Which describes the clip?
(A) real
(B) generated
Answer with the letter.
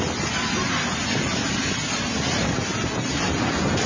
A